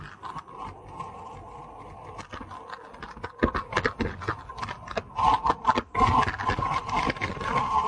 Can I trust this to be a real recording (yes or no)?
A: yes